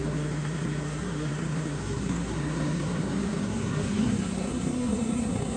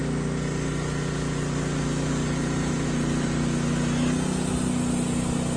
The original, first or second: second